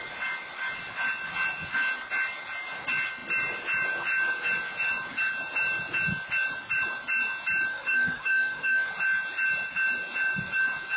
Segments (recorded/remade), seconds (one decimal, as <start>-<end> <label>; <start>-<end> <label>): 0.0-7.7 recorded; 7.7-8.9 remade; 8.9-11.0 recorded